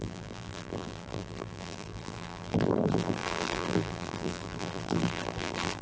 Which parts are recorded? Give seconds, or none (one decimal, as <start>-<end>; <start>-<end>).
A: none